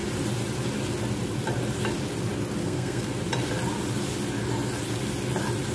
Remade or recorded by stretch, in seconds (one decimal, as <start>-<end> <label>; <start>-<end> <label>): 0.0-2.6 recorded; 2.6-3.1 remade; 3.1-5.7 recorded